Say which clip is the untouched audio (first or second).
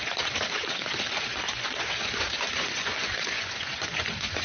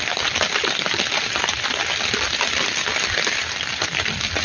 second